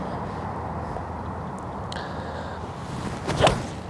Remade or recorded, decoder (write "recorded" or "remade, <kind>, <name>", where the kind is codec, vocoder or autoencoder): recorded